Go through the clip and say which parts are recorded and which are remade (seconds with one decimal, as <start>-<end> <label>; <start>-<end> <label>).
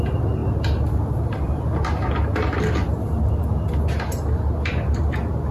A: 0.0-5.5 recorded